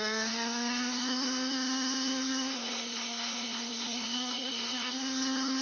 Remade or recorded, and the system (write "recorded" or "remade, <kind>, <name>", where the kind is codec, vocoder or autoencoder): remade, codec, SNAC